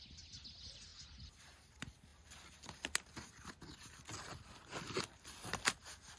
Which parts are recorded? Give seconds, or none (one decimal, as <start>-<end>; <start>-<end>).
0.0-6.2